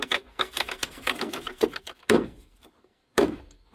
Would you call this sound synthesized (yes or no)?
yes